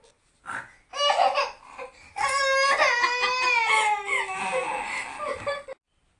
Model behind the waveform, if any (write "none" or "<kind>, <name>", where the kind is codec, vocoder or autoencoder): none